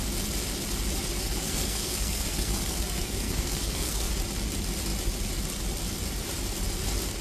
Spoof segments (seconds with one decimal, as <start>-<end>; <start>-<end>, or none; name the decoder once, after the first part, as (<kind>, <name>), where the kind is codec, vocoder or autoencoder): 1.2-4.1 (codec, SNAC)